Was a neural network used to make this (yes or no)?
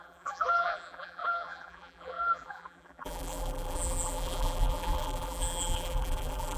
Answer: yes